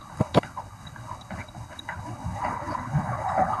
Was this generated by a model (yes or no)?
yes